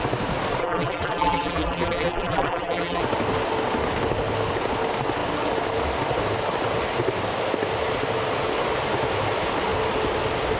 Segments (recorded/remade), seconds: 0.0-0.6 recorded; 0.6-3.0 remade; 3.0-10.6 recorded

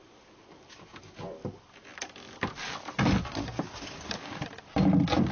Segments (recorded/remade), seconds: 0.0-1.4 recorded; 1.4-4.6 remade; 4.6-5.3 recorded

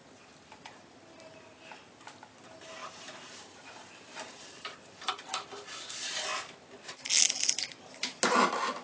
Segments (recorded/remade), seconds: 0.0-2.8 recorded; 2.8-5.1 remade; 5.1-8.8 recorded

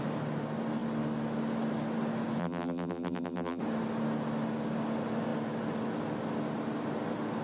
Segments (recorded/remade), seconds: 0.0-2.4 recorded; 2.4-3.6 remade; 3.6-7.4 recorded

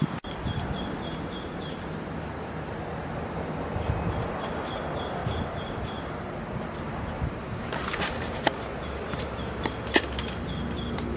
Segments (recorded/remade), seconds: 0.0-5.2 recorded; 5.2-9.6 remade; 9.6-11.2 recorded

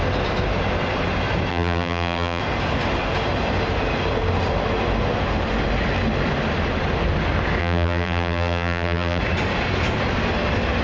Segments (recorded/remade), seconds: 0.0-1.5 recorded; 1.5-2.4 remade; 2.4-7.6 recorded; 7.6-9.2 remade; 9.2-10.8 recorded